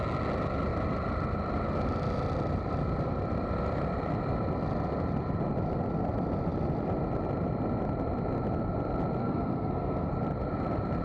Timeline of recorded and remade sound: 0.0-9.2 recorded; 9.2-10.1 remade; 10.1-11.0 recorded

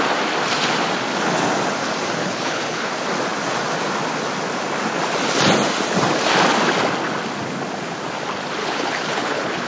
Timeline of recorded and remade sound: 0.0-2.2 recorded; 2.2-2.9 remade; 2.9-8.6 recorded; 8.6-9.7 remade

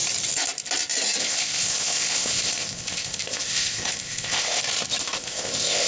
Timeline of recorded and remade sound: 0.0-1.2 recorded; 1.2-4.6 remade; 4.6-5.0 recorded; 5.0-5.9 remade

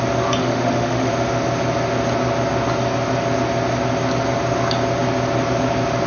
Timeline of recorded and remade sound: 0.0-0.4 recorded; 0.4-1.1 remade; 1.1-6.1 recorded

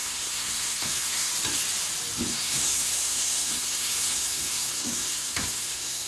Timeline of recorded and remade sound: 0.0-1.3 remade; 1.3-2.3 recorded; 2.3-6.1 remade

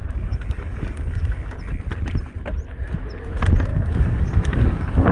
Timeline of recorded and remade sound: 0.0-1.4 remade; 1.4-3.7 recorded; 3.7-5.1 remade

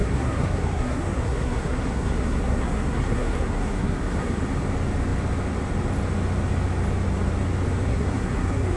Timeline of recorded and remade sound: 0.0-4.4 remade; 4.4-7.9 recorded; 7.9-8.8 remade

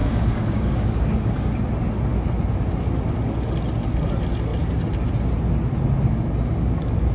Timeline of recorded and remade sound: 0.0-1.3 remade; 1.3-7.1 recorded